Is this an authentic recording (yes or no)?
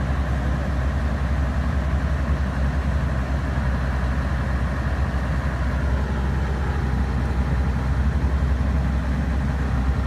yes